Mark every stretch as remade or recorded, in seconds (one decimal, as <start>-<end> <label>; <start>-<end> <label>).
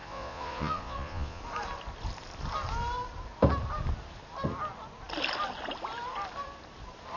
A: 0.0-1.4 remade; 1.4-7.2 recorded